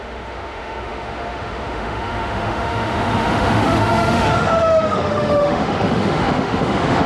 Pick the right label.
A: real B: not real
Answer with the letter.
B